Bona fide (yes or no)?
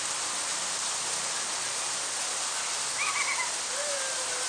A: yes